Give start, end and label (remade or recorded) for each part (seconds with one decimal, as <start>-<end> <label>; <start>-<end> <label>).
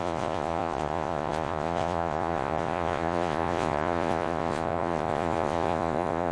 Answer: 0.0-6.3 remade